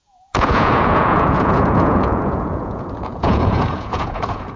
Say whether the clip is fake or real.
fake